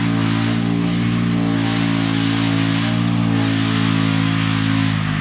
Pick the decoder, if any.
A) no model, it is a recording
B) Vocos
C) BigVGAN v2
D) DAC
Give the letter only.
A